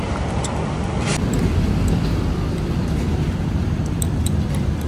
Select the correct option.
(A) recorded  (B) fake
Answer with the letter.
B